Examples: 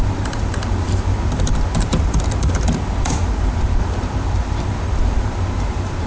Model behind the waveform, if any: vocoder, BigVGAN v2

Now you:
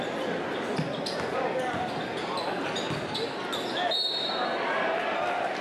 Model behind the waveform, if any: none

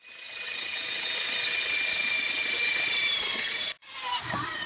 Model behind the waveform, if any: none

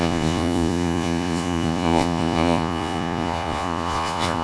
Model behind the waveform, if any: vocoder, Vocos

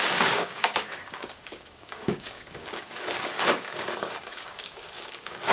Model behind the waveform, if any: codec, DAC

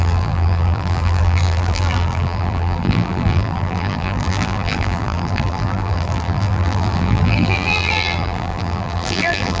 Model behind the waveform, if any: vocoder, BigVGAN v2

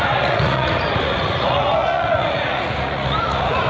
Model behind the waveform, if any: vocoder, Vocos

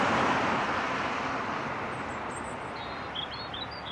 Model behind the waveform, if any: none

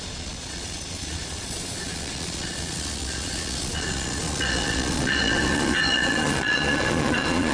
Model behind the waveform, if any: vocoder, Vocos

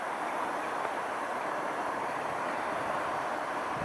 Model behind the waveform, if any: vocoder, BigVGAN v2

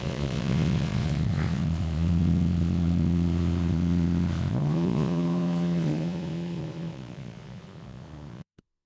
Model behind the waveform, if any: vocoder, Vocos